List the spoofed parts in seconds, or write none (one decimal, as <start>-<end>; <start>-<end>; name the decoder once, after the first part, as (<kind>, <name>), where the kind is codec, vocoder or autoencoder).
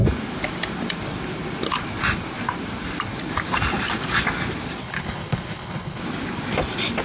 4.8-6.0 (codec, HILCodec)